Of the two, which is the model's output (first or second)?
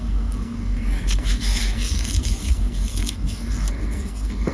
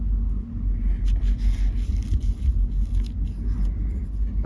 first